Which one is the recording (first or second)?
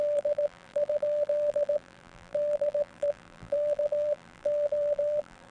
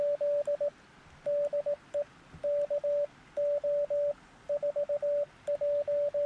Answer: second